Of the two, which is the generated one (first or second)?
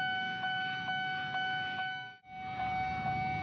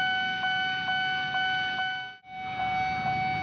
first